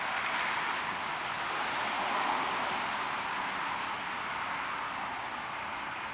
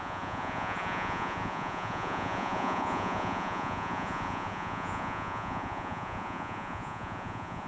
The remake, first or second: second